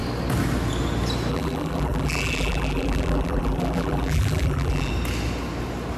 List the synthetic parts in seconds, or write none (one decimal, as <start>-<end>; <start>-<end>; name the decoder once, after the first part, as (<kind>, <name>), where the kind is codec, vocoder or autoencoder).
1.3-4.9 (vocoder, BigVGAN v2)